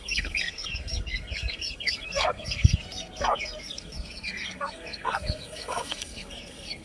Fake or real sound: fake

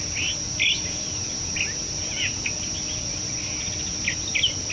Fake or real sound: real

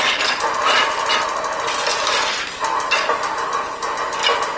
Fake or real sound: real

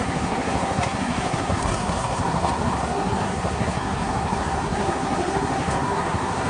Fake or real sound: fake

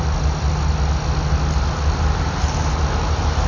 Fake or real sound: real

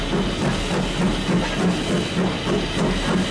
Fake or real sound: real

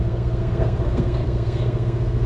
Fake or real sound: fake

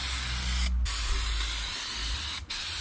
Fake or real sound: real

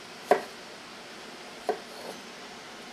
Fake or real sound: real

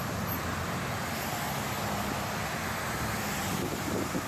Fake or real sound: real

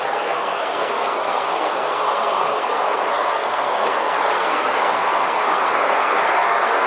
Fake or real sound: fake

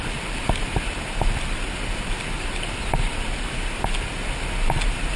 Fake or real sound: real